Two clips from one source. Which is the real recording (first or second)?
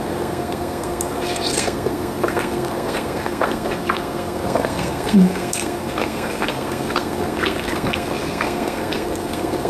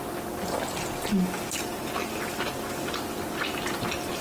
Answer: second